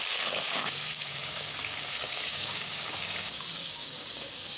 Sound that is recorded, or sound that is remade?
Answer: remade